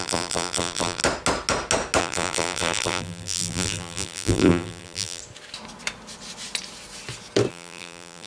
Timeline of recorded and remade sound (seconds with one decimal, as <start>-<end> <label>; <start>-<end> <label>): 0.0-1.0 remade; 1.0-2.0 recorded; 2.0-5.2 remade; 5.2-7.5 recorded; 7.5-8.3 remade